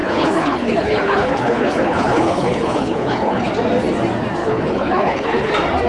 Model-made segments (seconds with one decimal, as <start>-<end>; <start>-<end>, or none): 0.0-3.5; 4.4-5.5